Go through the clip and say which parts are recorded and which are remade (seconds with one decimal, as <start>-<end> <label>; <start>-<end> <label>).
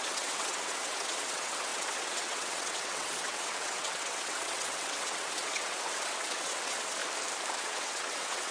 0.0-7.0 remade; 7.0-7.5 recorded; 7.5-8.5 remade